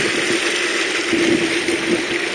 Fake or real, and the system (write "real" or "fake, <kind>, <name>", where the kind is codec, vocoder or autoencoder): real